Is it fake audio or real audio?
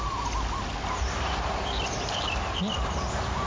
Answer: real